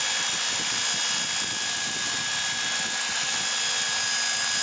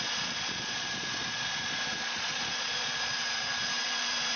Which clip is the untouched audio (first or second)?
first